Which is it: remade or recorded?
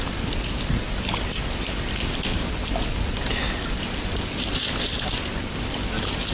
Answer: recorded